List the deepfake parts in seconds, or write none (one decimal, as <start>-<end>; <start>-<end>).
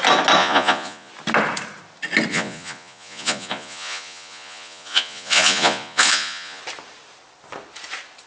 0.4-1.1; 2.3-6.6